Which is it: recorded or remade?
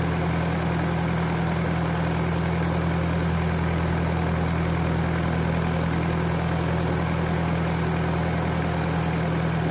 recorded